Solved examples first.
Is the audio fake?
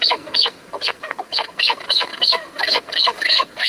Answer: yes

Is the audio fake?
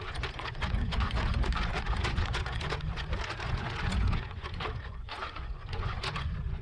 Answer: yes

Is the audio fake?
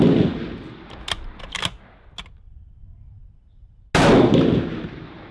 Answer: no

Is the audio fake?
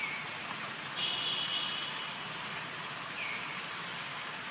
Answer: no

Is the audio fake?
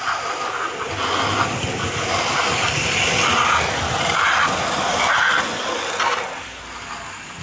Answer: no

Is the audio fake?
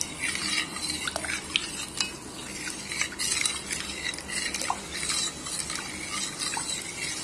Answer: no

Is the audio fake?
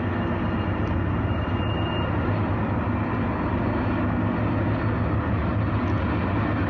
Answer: no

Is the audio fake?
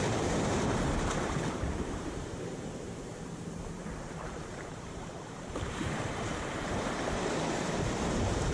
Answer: yes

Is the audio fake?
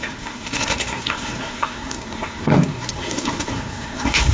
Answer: yes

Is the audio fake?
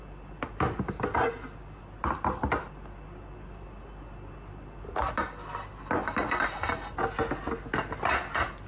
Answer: no